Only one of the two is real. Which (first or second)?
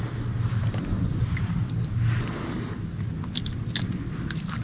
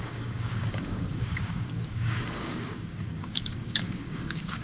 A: first